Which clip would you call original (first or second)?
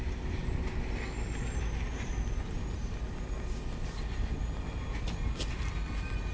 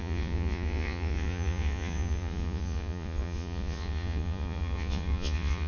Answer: first